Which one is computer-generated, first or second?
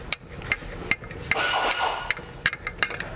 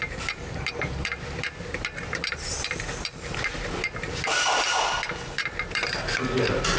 second